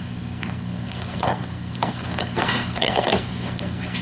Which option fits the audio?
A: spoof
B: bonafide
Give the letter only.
A